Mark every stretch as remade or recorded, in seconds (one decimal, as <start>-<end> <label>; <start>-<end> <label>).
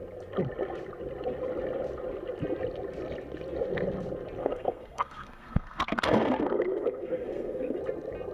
0.0-4.4 recorded; 4.4-7.8 remade; 7.8-8.3 recorded